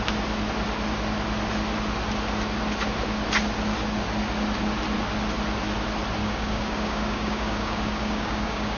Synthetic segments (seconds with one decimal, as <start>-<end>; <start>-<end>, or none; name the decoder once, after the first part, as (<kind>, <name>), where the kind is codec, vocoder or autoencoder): 6.2-8.8 (codec, DAC)

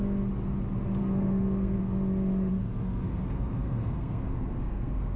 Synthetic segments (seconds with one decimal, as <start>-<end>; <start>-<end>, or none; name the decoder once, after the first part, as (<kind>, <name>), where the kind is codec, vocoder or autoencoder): 1.0-1.8 (codec, SNAC); 2.5-5.2

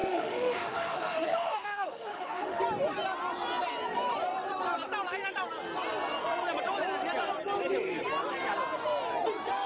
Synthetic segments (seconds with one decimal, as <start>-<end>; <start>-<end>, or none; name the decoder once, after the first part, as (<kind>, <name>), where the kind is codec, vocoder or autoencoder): 0.0-2.6 (autoencoder, DAC-VAE)

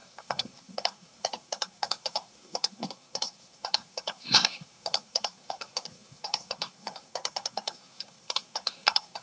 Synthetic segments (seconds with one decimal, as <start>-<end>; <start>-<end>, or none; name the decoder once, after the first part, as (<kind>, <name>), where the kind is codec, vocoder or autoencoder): 0.0-9.2 (codec, SNAC)

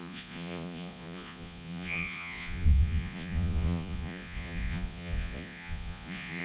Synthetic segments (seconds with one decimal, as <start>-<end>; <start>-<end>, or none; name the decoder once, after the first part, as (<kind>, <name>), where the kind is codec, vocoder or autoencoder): 0.0-6.4 (vocoder, Vocos)

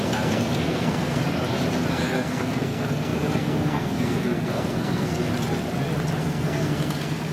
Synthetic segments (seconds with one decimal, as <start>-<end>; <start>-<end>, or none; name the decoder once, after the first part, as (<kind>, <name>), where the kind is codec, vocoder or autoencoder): 0.0-1.2 (codec, SNAC); 1.9-5.3; 6.2-7.3